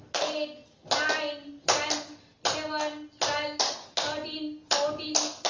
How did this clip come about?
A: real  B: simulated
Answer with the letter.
A